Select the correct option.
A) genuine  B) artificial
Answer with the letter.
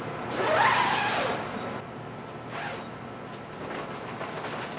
A